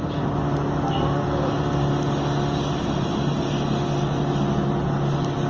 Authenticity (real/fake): real